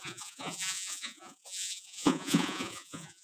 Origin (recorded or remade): remade